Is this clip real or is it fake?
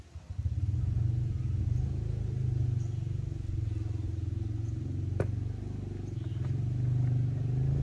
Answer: real